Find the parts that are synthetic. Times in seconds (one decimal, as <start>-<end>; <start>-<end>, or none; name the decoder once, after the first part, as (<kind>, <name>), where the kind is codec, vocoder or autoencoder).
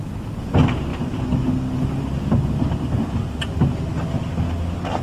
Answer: none